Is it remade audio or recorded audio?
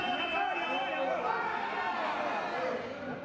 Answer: recorded